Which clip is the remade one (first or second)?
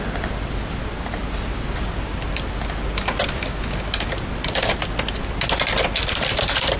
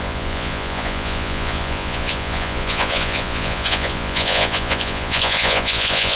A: second